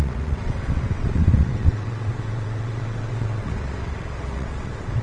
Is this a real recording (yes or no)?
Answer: no